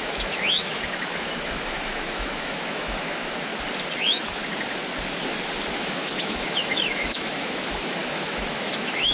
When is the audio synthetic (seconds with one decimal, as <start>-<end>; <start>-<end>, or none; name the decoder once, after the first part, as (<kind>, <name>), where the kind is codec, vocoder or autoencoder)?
0.0-3.5 (autoencoder, DAC-VAE); 4.0-4.4; 5.7-9.1

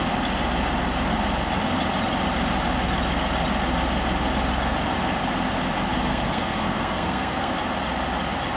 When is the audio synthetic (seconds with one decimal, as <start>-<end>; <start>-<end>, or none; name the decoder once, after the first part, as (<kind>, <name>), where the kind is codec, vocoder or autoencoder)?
5.9-7.5 (codec, SNAC)

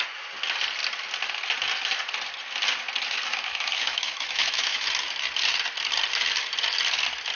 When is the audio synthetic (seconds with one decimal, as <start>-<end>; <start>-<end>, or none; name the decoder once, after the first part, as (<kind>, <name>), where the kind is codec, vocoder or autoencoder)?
3.3-4.9 (autoencoder, DAC-VAE)

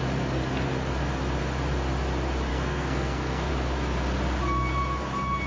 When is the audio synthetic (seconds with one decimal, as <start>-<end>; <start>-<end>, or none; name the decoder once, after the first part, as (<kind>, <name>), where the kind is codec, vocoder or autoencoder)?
2.5-3.5 (codec, SNAC)

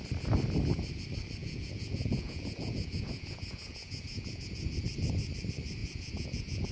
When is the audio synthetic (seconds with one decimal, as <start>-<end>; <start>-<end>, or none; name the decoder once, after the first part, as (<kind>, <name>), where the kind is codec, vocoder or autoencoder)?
1.4-4.8 (vocoder, Vocos); 5.8-6.7

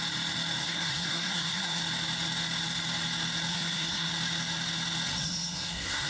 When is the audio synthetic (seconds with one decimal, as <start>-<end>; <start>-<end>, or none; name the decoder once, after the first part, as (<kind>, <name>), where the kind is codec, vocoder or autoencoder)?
0.6-1.8 (codec, SNAC); 3.5-4.1; 5.2-6.1

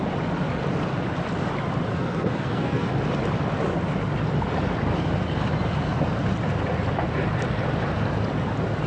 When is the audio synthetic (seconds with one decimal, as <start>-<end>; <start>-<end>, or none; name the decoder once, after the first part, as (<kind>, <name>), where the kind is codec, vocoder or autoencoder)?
1.9-2.9 (codec, SNAC)